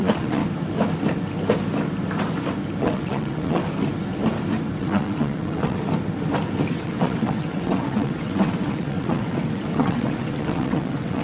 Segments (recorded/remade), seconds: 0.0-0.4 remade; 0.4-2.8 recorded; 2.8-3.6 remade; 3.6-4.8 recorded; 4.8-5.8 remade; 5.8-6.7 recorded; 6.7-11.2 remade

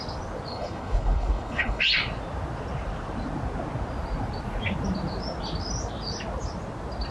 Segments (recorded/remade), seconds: 0.0-0.5 recorded; 0.5-1.8 remade; 1.8-7.1 recorded